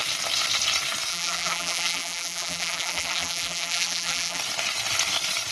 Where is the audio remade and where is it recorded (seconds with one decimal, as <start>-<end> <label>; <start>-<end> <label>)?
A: 0.0-1.1 recorded; 1.1-4.4 remade; 4.4-5.5 recorded